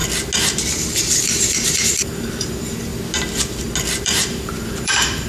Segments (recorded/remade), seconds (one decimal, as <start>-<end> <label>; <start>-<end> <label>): 0.0-0.7 recorded; 0.7-2.9 remade; 2.9-4.0 recorded; 4.0-5.3 remade